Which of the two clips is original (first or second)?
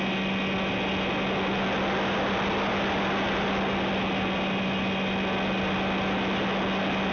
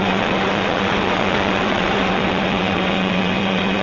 first